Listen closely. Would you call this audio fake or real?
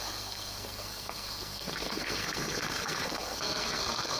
fake